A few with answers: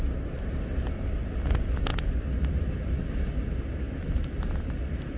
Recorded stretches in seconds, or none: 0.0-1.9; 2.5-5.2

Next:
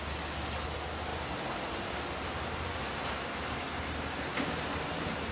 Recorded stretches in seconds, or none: 0.0-5.3